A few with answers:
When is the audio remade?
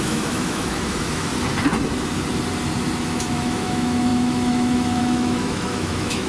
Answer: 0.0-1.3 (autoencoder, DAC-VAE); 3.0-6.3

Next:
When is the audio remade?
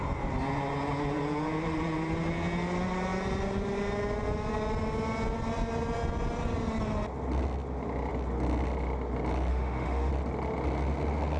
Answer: 9.5-10.1 (autoencoder, DAC-VAE)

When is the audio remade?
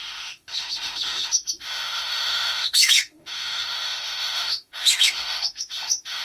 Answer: 0.0-6.2 (autoencoder, DAC-VAE)